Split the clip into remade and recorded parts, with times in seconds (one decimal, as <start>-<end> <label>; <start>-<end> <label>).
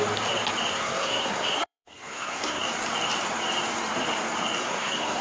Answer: 0.0-0.7 recorded; 0.7-2.6 remade; 2.6-4.6 recorded; 4.6-5.2 remade